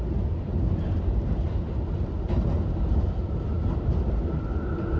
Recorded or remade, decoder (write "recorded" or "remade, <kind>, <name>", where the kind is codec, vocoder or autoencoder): recorded